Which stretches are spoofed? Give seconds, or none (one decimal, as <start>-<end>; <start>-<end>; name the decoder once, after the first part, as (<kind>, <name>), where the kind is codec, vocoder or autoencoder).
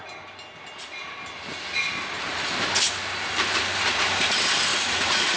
4.7-5.4 (vocoder, Vocos)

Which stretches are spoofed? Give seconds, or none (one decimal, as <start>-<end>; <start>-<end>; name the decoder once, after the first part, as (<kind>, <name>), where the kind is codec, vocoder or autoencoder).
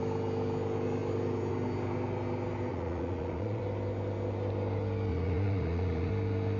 2.7-3.6 (vocoder, Vocos); 5.1-6.1